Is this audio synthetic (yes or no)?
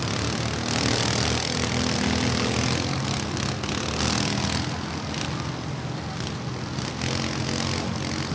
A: no